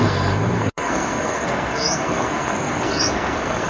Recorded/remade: remade